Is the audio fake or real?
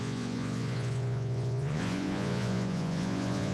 fake